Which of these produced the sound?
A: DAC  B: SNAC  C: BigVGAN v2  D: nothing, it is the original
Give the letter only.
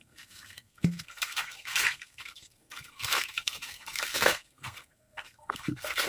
B